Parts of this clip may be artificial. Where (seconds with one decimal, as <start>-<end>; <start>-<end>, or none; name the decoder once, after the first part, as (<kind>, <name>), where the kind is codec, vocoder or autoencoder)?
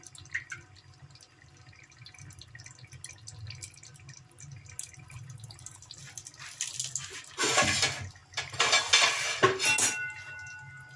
none